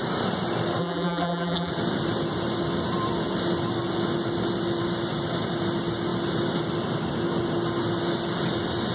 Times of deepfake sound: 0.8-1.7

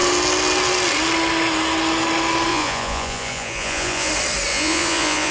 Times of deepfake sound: 2.5-4.1; 4.5-5.3